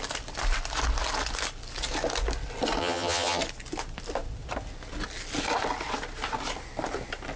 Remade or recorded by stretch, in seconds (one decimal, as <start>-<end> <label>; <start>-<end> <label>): 0.0-2.8 recorded; 2.8-3.4 remade; 3.4-7.4 recorded